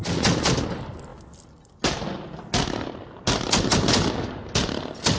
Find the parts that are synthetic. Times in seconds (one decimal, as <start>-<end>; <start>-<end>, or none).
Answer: none